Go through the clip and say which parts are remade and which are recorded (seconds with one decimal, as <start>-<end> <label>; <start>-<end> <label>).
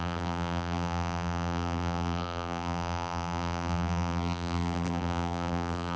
0.0-6.0 remade